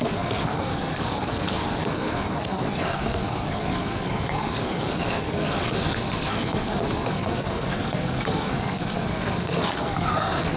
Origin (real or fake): fake